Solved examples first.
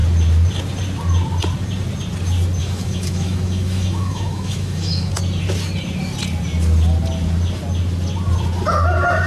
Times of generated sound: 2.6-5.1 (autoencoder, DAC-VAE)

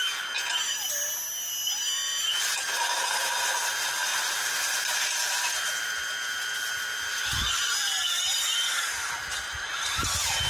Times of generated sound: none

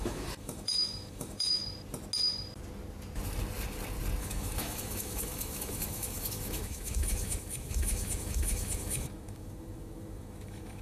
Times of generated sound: 0.0-1.6 (autoencoder, DAC-VAE); 4.2-10.8

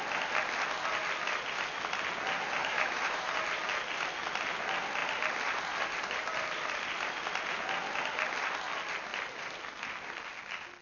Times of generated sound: 2.6-3.3 (autoencoder, DAC-VAE)